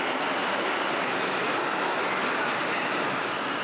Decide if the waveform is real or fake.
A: real